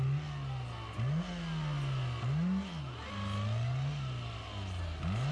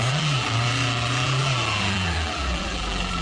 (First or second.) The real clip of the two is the first